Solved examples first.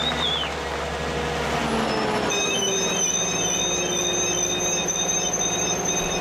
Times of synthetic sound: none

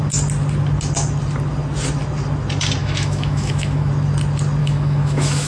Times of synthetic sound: 2.8-3.9 (autoencoder, DAC-VAE); 4.6-5.5

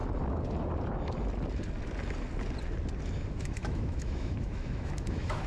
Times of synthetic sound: 3.3-5.5 (autoencoder, DAC-VAE)

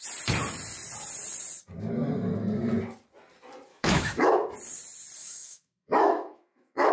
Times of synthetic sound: 3.7-4.3 (autoencoder, DAC-VAE); 5.2-6.9

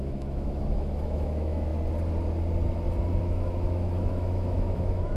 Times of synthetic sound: 0.0-1.7 (autoencoder, DAC-VAE); 3.2-5.2